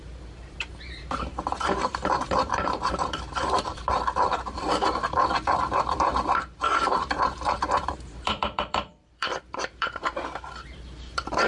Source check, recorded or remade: remade